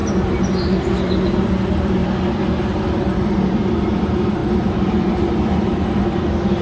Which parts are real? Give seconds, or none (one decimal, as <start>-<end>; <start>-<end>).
0.0-6.6

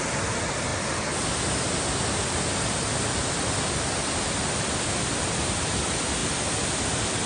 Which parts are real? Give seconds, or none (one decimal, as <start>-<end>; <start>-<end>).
0.7-3.8

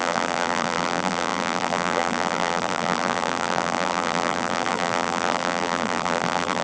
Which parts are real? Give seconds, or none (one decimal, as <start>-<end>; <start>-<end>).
none

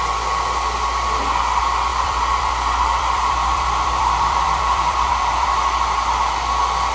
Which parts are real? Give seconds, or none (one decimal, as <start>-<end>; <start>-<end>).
0.0-1.9; 5.5-6.9

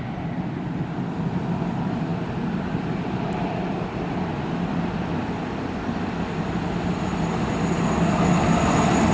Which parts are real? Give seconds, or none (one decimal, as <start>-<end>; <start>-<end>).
0.0-9.1

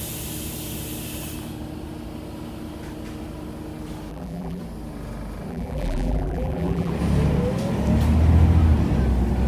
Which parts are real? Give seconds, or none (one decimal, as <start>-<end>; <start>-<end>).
0.0-4.1; 4.6-5.5; 6.9-9.5

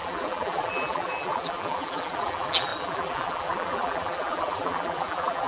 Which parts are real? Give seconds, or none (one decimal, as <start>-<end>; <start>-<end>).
none

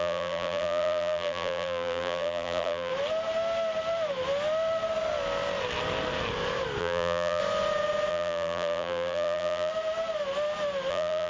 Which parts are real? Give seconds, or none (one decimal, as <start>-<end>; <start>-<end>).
2.9-6.8; 7.4-8.1; 9.7-10.9